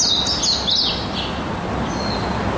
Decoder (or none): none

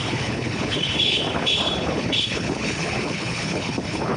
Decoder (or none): codec, HILCodec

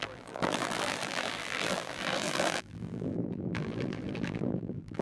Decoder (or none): vocoder, BigVGAN v2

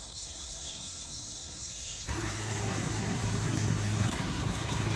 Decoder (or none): codec, SNAC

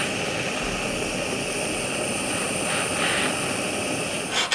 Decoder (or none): none